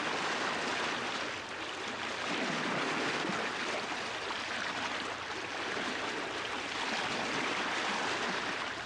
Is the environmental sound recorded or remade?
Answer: recorded